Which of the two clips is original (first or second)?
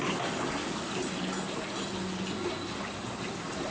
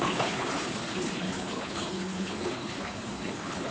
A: first